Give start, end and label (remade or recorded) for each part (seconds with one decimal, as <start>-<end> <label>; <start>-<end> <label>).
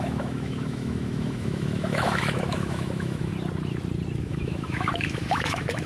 0.0-3.3 remade; 3.3-4.2 recorded; 4.2-5.9 remade